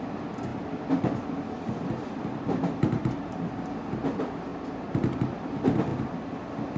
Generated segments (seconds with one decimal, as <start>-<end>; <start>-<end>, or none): 0.5-3.9